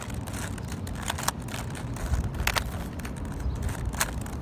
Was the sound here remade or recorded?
recorded